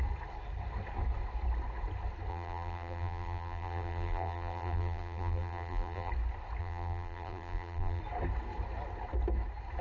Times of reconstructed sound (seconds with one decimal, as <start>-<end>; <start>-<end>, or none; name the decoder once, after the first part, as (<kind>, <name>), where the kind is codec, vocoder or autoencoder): 2.3-6.1 (vocoder, BigVGAN v2); 6.6-8.0